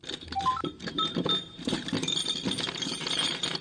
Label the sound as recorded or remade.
remade